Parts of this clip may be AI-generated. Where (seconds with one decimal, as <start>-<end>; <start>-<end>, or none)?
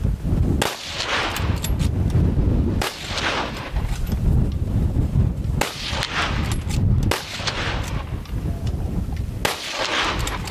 2.5-3.2